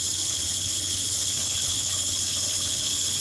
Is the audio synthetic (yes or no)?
yes